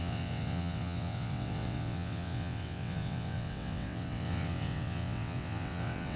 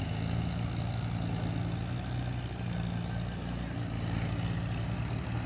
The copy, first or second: first